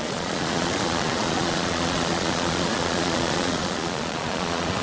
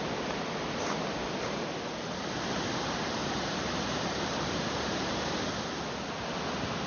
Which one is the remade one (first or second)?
first